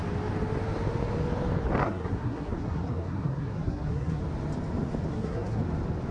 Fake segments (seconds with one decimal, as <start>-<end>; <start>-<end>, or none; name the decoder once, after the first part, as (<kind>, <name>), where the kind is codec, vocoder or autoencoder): 1.8-4.2 (codec, SNAC); 5.1-5.6